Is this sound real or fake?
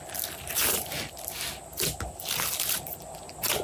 real